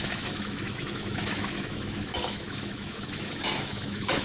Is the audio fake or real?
fake